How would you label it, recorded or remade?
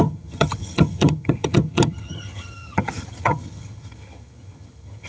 remade